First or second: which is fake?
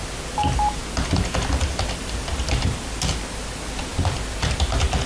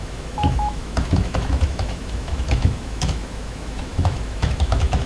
second